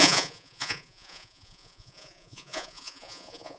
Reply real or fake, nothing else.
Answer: fake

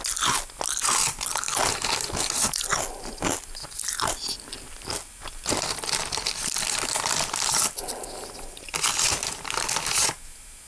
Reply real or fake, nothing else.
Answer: real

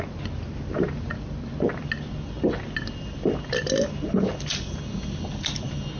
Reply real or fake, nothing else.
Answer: real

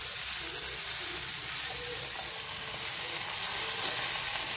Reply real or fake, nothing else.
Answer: real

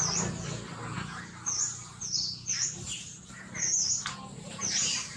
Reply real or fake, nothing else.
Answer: real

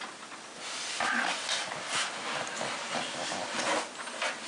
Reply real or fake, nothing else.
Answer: real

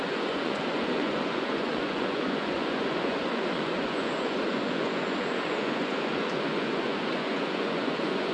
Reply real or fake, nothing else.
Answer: fake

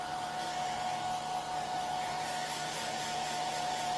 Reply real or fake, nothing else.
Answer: real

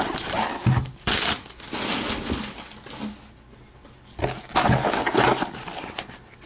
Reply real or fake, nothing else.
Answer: real